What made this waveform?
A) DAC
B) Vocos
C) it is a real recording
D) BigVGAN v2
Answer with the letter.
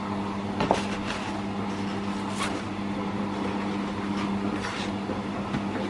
C